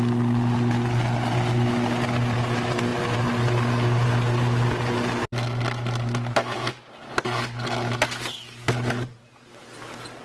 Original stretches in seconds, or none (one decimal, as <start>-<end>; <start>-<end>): 0.0-10.2